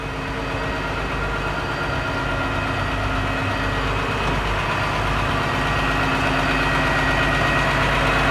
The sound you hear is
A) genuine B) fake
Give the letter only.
A